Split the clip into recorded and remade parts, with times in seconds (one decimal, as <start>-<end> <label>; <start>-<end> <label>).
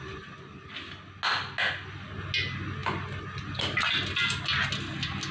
0.0-5.3 recorded